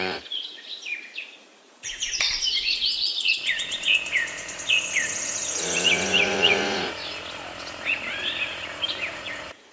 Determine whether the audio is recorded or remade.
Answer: remade